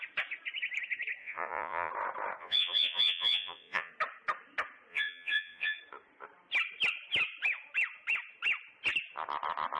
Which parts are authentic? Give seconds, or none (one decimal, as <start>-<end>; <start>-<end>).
0.0-1.2; 1.9-2.4; 3.9-4.9; 5.8-9.8